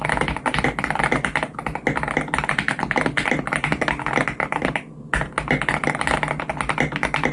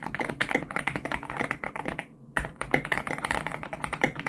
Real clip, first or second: first